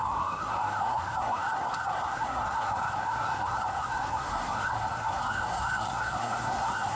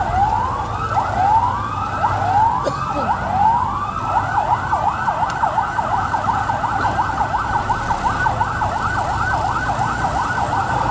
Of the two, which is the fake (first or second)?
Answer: first